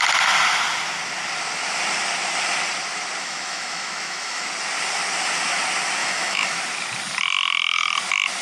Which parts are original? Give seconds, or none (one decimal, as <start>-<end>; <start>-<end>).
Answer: 0.0-3.2; 4.5-6.0; 6.6-8.4